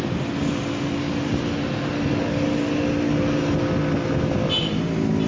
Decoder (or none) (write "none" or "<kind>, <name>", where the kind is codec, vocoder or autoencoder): none